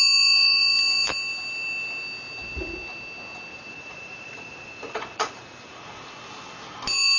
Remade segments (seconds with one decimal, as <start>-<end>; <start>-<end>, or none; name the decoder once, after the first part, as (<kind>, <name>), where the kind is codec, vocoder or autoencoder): 3.5-6.1 (vocoder, Vocos)